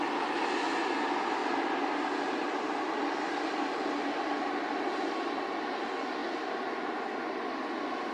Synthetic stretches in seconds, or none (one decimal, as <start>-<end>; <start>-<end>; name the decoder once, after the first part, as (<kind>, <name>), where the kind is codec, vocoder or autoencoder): 1.4-4.4 (vocoder, BigVGAN v2); 6.2-7.0